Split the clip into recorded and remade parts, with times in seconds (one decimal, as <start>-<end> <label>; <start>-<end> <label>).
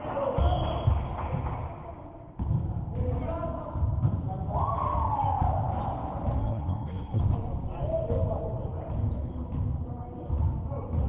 0.0-6.4 recorded; 6.4-7.2 remade; 7.2-11.1 recorded